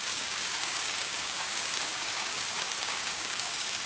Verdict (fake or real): fake